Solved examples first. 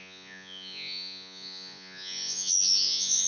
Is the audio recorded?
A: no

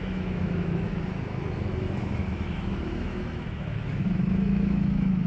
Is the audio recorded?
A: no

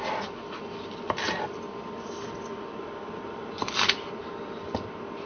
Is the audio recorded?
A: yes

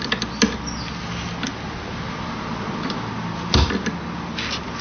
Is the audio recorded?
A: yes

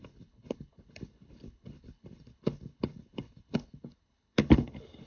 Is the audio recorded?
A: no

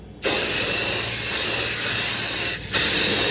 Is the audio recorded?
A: yes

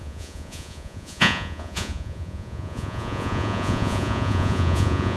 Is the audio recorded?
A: no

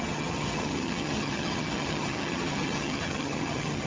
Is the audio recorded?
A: no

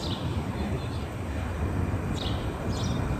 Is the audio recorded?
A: yes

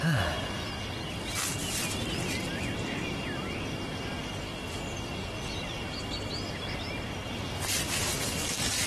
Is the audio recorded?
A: yes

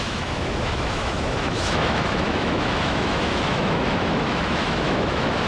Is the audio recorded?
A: no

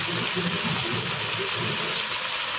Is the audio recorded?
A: yes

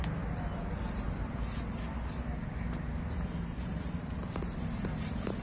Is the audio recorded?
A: yes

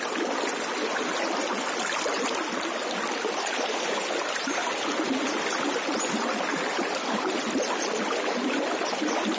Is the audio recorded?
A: yes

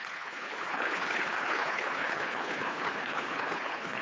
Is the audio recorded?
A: no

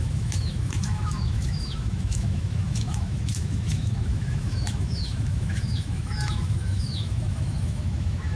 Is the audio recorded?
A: no